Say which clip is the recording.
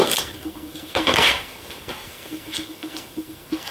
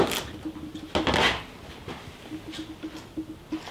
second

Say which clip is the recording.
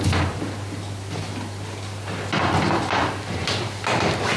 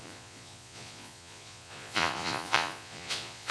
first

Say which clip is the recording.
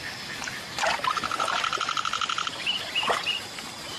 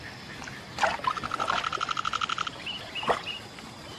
second